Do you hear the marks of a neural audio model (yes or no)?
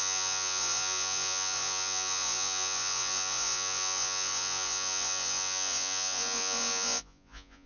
yes